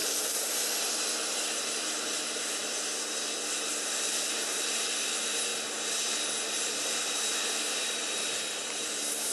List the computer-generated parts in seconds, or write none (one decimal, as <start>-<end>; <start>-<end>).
0.0-2.6; 3.7-5.5; 6.5-9.3